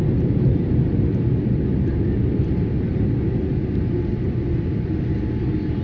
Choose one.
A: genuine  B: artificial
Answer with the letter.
A